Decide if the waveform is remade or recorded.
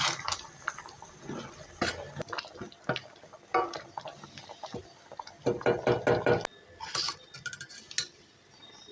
recorded